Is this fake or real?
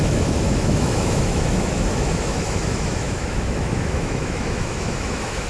fake